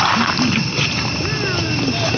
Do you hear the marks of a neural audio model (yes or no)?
no